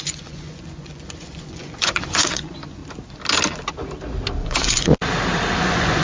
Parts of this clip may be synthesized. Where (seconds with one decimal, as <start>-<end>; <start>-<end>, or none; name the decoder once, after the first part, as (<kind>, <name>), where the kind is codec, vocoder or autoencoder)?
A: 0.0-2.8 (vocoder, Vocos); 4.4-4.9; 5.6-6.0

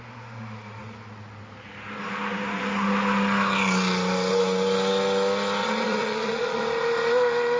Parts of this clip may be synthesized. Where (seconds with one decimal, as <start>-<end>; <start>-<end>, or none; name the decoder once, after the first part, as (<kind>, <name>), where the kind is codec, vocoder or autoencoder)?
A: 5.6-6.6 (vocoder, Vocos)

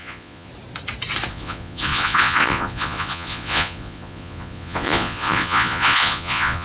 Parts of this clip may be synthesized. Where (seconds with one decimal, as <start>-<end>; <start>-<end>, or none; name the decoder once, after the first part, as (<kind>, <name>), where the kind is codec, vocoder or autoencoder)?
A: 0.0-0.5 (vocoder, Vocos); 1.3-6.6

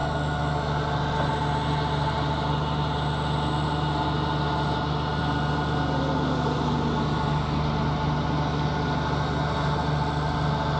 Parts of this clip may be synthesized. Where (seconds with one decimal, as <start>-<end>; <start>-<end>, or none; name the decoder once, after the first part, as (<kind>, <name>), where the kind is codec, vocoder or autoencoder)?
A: none

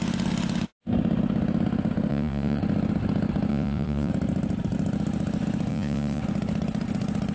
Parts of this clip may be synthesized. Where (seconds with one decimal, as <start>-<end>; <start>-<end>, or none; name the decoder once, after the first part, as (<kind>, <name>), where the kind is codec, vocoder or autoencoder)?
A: 2.1-2.6 (vocoder, Vocos); 3.5-4.1; 5.7-6.2